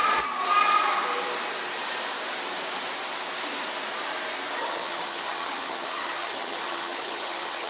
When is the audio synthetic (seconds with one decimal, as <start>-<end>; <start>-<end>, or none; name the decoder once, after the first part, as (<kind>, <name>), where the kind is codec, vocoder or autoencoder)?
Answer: 4.6-7.7 (vocoder, HiFi-GAN)